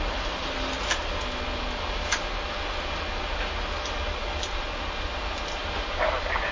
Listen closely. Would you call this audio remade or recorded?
recorded